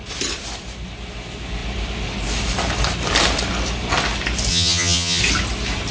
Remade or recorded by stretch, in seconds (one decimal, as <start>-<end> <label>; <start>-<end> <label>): 0.0-4.5 recorded; 4.5-5.2 remade; 5.2-5.9 recorded

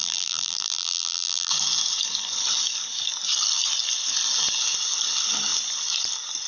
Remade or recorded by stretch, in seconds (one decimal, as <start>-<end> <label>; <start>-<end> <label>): 0.0-1.5 remade; 1.5-6.5 recorded

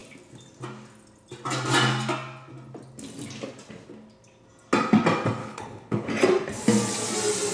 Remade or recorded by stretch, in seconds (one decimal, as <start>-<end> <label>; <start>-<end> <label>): 0.0-5.4 recorded; 5.4-6.1 remade; 6.1-7.5 recorded

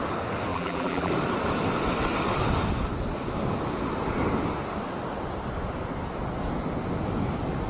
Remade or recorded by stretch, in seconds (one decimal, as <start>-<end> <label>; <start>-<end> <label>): 0.0-0.5 recorded; 0.5-1.1 remade; 1.1-7.7 recorded

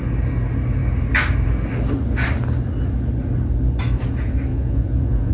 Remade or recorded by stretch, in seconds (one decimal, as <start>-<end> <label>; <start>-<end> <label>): 0.0-4.5 recorded; 4.5-5.3 remade

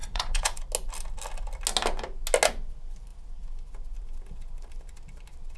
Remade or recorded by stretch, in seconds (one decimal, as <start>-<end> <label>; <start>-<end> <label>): 0.0-0.6 remade; 0.6-5.6 recorded

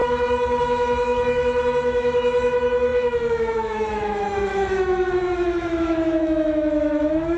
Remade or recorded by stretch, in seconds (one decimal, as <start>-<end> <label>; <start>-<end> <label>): 0.0-7.4 remade